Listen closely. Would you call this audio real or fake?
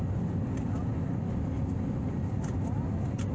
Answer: real